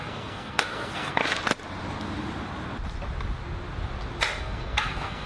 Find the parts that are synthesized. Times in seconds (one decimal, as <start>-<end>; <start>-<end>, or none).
0.0-1.2; 4.4-5.3